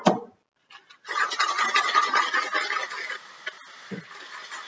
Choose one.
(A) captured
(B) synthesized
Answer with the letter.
A